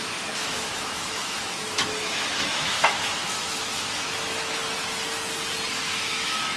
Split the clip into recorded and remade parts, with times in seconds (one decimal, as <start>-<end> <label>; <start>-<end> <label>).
0.0-4.6 remade; 4.6-5.7 recorded; 5.7-6.6 remade